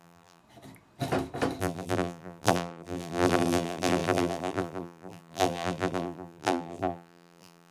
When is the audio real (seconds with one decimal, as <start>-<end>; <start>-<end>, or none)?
0.4-1.6